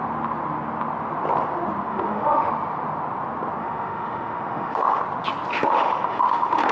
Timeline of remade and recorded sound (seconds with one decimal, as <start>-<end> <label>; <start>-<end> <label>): 0.0-1.9 recorded; 1.9-2.5 remade; 2.5-3.6 recorded; 3.6-5.0 remade; 5.0-5.5 recorded; 5.5-6.7 remade